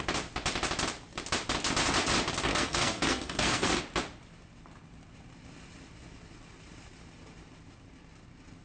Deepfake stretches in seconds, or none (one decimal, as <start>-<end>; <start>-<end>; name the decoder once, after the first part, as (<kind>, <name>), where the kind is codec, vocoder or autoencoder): 2.5-3.8 (codec, SNAC)